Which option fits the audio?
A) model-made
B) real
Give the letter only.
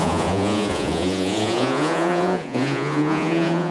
A